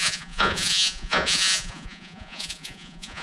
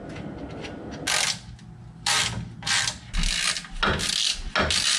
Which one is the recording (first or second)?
second